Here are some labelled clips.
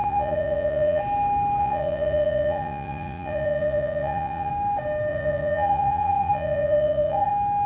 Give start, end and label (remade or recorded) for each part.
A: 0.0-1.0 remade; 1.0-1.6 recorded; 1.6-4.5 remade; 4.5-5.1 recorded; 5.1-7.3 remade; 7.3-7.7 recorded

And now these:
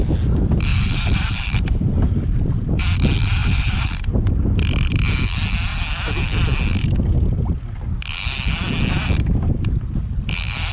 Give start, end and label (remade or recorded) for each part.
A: 0.0-0.7 recorded; 0.7-2.8 remade; 2.8-3.4 recorded; 3.4-3.9 remade; 3.9-10.7 recorded

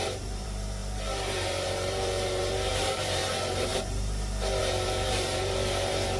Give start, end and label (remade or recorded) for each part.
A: 0.0-3.7 remade; 3.7-4.6 recorded; 4.6-6.2 remade

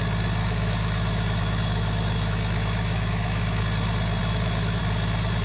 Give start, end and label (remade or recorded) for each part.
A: 0.0-0.4 recorded; 0.4-3.6 remade; 3.6-4.2 recorded; 4.2-4.8 remade; 4.8-5.4 recorded

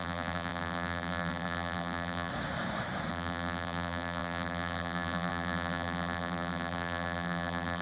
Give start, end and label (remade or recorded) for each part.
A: 0.0-2.3 remade; 2.3-3.1 recorded; 3.1-7.8 remade